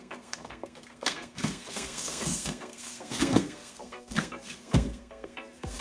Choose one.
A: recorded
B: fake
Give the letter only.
B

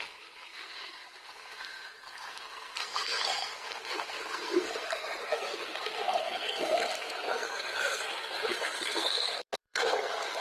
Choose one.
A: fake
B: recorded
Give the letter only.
A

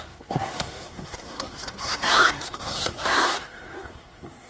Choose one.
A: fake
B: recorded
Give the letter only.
A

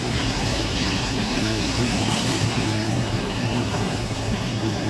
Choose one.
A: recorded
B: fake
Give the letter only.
B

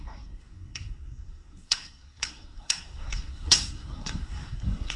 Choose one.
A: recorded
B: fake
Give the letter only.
B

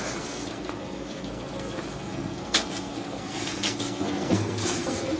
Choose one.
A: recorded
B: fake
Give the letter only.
B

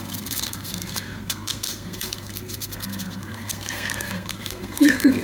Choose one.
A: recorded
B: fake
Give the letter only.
B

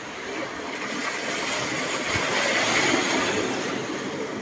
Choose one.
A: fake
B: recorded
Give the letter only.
B